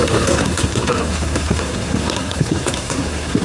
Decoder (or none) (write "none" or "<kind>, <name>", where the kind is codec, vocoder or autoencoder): codec, SNAC